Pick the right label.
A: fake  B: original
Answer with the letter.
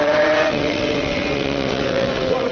A